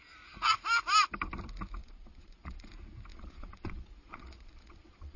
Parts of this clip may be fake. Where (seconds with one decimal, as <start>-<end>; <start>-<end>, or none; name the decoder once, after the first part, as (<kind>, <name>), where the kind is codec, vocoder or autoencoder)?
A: 1.8-2.7 (vocoder, Vocos); 3.1-5.2